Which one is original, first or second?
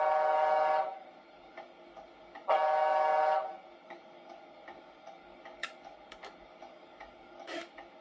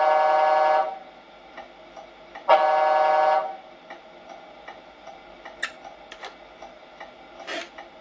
second